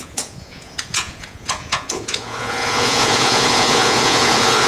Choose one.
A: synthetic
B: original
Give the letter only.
A